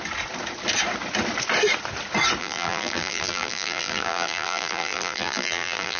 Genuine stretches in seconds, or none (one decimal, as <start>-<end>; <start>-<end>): 0.0-2.4